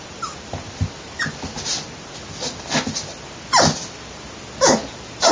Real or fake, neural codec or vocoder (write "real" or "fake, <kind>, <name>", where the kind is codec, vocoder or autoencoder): real